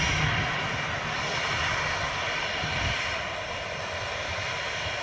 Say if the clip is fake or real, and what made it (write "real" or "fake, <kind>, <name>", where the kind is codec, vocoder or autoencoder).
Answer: real